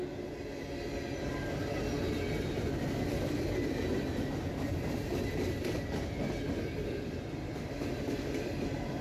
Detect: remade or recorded recorded